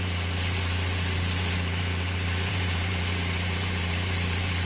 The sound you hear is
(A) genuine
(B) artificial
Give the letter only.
B